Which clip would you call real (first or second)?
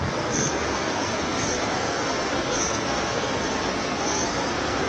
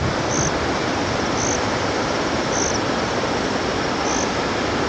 second